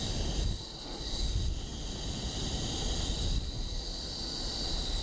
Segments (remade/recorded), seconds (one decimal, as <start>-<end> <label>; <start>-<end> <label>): 0.0-5.0 recorded